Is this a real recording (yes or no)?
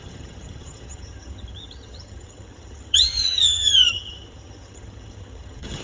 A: no